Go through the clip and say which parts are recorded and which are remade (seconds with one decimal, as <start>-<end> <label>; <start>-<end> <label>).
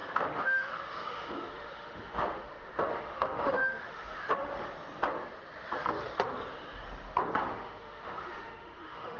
0.0-4.6 remade; 4.6-7.5 recorded; 7.5-9.2 remade